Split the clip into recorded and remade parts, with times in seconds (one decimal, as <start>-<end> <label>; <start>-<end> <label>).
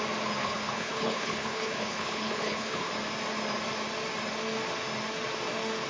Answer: 0.0-0.4 recorded; 0.4-2.9 remade; 2.9-5.9 recorded